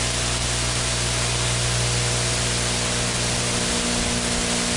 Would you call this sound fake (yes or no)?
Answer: no